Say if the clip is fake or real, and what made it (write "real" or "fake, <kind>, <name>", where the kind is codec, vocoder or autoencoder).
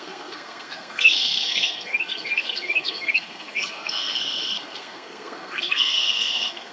fake, codec, SNAC